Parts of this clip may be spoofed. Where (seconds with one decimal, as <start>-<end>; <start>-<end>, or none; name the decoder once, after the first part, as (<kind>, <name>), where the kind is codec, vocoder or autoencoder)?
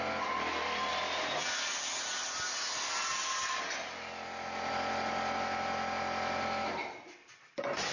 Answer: none